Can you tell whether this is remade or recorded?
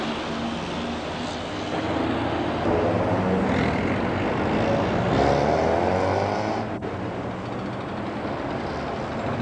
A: recorded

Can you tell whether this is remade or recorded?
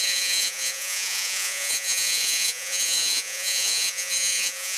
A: remade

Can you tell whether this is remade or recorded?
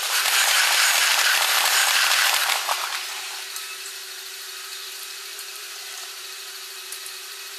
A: remade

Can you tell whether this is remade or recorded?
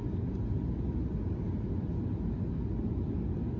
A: recorded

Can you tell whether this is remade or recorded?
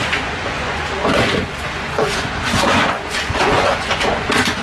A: remade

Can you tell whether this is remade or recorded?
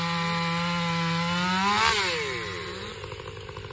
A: recorded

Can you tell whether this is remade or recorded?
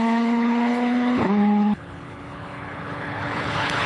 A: remade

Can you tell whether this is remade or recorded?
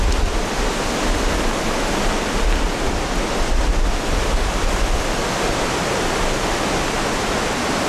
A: recorded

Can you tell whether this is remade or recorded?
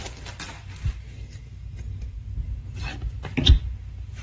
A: recorded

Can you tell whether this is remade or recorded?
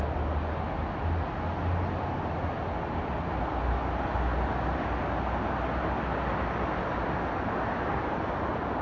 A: recorded